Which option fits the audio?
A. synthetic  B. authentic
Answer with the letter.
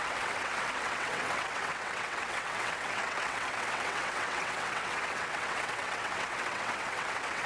A